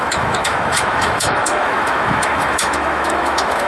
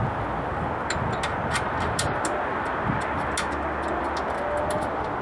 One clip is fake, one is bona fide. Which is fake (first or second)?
first